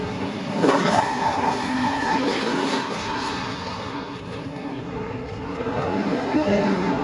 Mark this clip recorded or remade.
remade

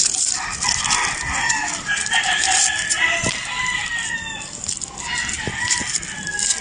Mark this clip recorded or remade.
recorded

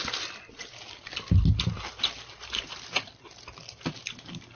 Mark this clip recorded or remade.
recorded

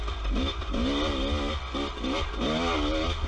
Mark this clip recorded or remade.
recorded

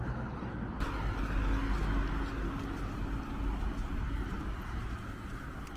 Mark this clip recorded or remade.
recorded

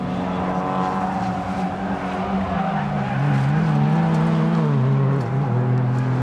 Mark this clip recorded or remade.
recorded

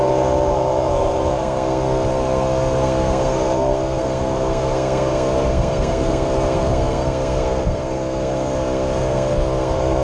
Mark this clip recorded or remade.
remade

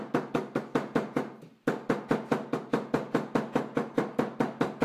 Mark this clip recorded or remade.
recorded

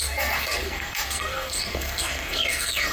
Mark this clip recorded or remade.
remade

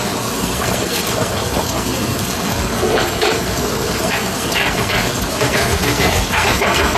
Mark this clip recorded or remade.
remade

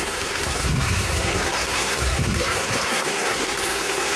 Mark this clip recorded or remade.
remade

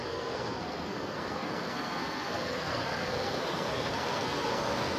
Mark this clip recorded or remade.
remade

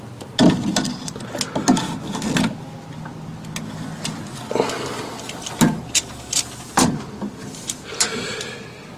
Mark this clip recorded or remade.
recorded